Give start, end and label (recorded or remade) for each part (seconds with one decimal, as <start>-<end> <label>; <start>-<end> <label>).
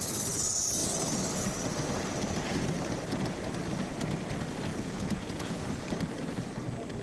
0.0-4.7 recorded; 4.7-5.6 remade; 5.6-7.0 recorded